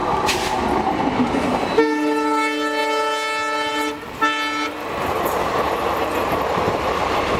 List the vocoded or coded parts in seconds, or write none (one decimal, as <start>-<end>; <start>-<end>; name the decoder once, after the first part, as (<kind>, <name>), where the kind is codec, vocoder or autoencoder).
none